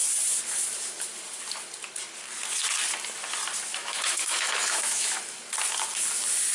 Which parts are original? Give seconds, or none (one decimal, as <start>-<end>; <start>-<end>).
0.0-3.8; 5.2-6.5